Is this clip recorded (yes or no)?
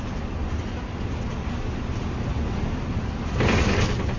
yes